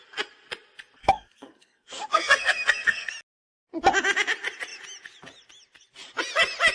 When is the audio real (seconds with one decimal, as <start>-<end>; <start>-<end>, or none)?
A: 0.0-1.0; 3.1-6.7